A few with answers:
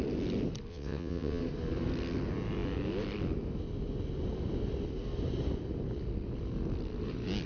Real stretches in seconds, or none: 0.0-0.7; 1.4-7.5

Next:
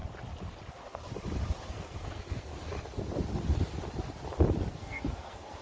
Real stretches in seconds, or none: 0.0-0.7; 1.1-1.7; 2.5-4.7